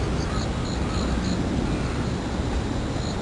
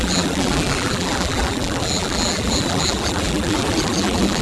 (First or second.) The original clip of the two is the first